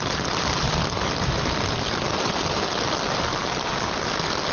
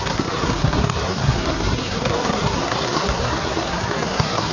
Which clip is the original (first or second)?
first